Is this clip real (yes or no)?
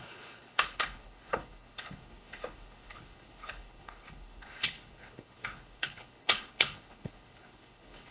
no